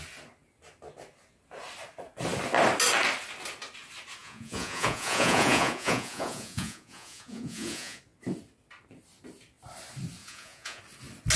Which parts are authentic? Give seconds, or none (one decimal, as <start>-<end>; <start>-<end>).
0.0-4.2; 8.0-10.2; 10.8-11.4